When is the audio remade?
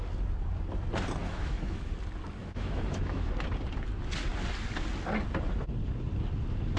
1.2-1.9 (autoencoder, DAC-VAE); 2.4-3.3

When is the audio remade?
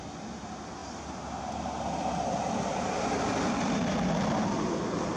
none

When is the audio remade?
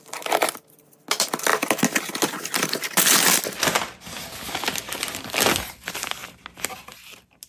none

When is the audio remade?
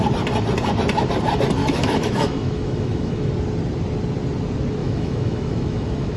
1.6-3.3 (autoencoder, DAC-VAE); 4.8-6.2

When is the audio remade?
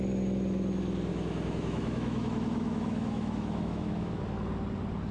1.1-4.2 (autoencoder, DAC-VAE)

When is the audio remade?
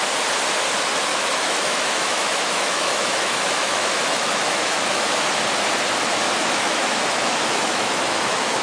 1.1-5.2 (autoencoder, DAC-VAE); 6.4-8.6